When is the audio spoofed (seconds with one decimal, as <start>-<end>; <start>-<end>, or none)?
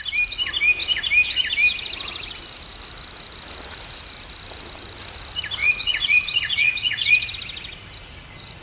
5.6-7.3